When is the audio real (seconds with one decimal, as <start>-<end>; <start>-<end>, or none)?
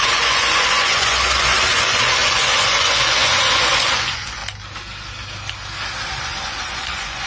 4.4-6.2